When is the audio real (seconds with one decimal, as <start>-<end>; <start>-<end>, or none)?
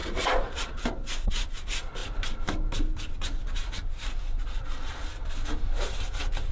0.7-4.4; 5.0-6.5